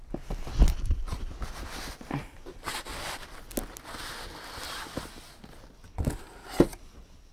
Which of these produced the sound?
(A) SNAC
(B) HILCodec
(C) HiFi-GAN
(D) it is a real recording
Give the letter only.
D